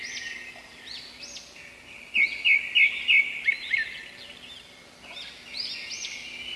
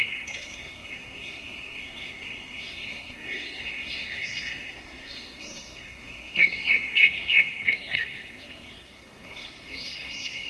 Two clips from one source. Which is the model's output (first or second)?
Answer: second